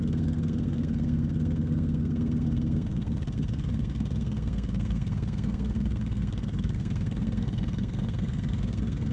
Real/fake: fake